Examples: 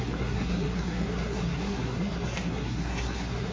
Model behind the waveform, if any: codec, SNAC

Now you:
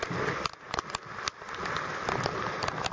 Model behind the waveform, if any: none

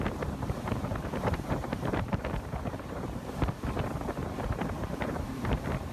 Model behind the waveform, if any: vocoder, BigVGAN v2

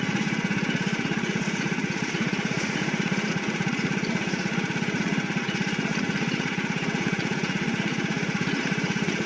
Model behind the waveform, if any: vocoder, Vocos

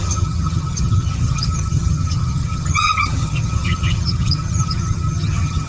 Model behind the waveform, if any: vocoder, HiFi-GAN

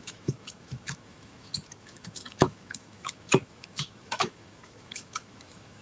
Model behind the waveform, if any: autoencoder, DAC-VAE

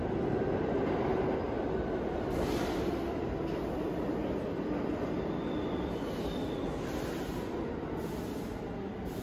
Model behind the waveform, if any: none